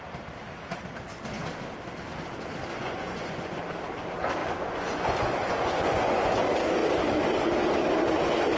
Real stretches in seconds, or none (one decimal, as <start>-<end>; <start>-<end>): 0.0-2.7; 3.6-4.4; 6.3-8.6